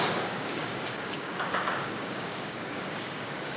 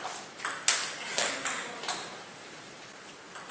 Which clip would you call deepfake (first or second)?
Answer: first